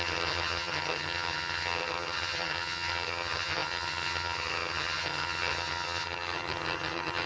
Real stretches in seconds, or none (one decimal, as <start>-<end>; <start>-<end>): none